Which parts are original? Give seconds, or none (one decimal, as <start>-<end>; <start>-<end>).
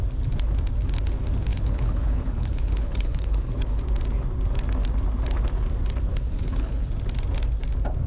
0.0-1.5; 3.8-6.1; 6.9-8.1